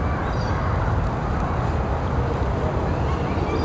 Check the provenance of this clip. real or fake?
real